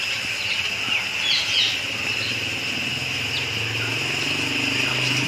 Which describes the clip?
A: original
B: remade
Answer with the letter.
A